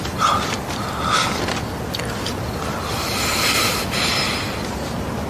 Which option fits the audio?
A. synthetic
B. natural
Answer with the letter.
B